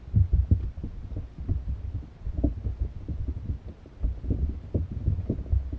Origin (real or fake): real